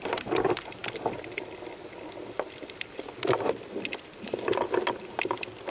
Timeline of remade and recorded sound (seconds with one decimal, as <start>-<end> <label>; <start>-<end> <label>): 0.0-5.7 recorded